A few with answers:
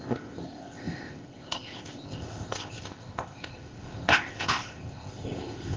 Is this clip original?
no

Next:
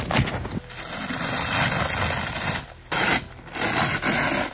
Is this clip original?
yes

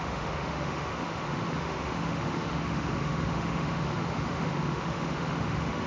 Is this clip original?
no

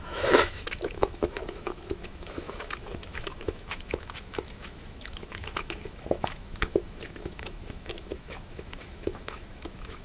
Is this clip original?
no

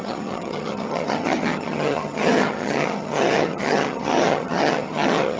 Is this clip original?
no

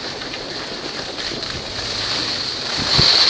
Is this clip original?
yes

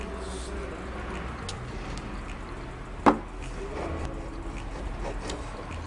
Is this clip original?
yes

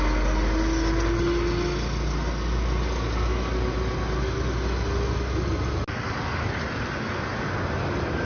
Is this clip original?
yes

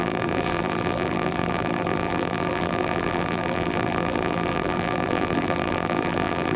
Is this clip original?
no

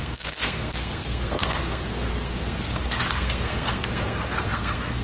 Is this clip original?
no